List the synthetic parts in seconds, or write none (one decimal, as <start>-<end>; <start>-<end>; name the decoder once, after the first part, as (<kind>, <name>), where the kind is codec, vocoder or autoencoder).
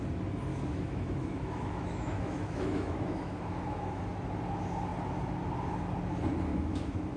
0.5-4.0 (autoencoder, DAC-VAE); 6.5-7.2